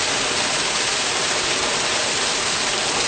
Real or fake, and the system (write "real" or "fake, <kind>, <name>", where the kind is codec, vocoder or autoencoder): real